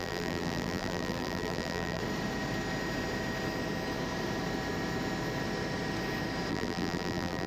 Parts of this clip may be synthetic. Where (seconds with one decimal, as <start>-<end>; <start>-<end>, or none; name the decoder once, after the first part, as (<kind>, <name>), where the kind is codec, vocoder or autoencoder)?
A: 0.0-2.0 (vocoder, BigVGAN v2); 6.5-7.5